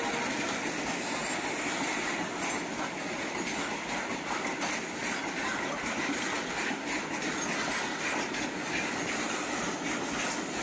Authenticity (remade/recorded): recorded